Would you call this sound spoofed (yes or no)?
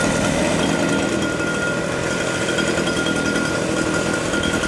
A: no